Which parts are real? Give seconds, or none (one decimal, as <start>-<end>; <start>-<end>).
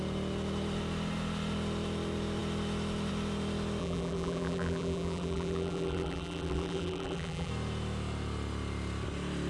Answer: 0.0-3.8; 7.5-9.5